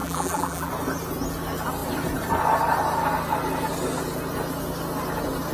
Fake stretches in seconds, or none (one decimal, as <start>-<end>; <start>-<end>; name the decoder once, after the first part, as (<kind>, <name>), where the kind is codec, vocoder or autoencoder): 0.0-0.7 (vocoder, BigVGAN v2)